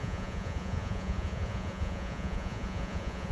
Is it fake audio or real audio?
fake